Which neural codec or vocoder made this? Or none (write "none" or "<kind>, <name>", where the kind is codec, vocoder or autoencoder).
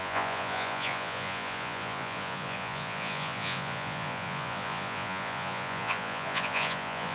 vocoder, Vocos